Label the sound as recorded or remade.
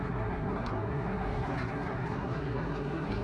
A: remade